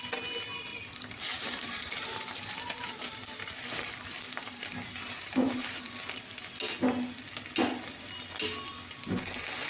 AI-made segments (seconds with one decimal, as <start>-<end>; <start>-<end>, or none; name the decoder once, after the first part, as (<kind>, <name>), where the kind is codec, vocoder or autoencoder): 0.7-5.9 (vocoder, BigVGAN v2)